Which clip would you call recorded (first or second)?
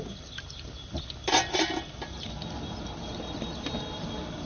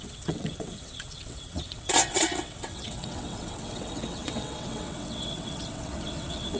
first